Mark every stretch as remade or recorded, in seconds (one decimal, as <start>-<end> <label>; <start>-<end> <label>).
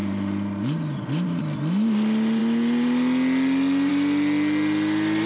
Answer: 0.0-1.4 remade; 1.4-5.3 recorded